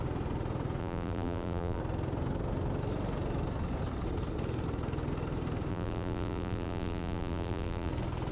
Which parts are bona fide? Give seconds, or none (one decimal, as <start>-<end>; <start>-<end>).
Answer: 0.0-0.8; 1.8-5.7; 7.9-8.3